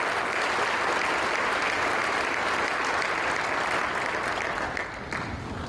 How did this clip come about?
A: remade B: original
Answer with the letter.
B